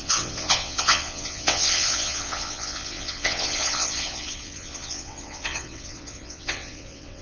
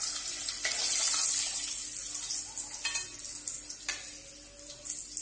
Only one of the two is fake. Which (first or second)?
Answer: first